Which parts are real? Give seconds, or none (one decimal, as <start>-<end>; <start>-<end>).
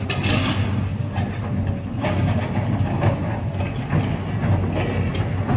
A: 0.0-2.0; 3.1-5.6